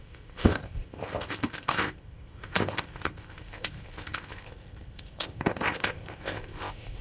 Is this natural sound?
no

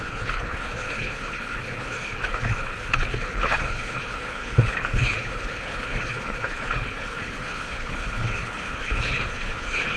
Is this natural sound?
no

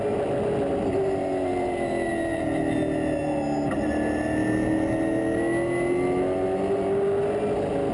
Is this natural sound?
yes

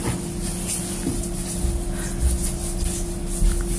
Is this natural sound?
yes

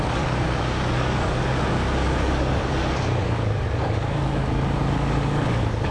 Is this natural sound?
no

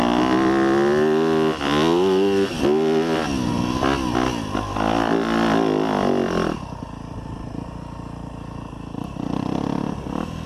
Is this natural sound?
yes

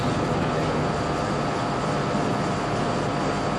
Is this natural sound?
yes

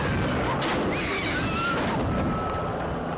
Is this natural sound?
yes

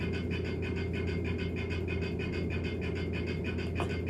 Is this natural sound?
yes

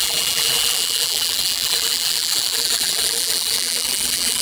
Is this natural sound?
no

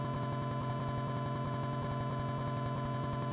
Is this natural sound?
yes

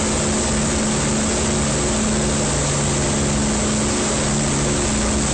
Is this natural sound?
yes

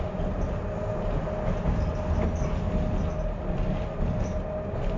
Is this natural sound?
yes